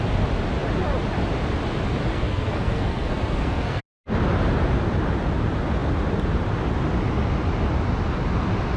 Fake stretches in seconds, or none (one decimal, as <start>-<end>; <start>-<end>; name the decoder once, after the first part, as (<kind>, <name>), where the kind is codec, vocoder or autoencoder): 2.1-3.8 (codec, SNAC)